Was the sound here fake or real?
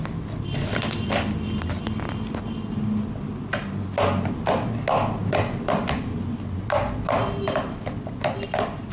real